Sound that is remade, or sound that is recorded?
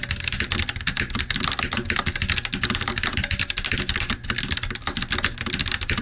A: recorded